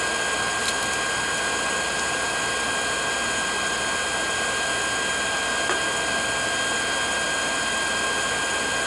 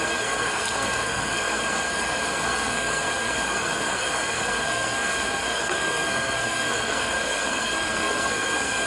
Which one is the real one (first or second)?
first